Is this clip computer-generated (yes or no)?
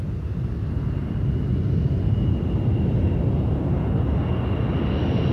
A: no